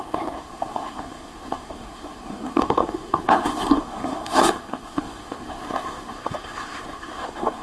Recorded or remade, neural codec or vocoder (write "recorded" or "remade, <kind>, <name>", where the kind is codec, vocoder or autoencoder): remade, codec, SNAC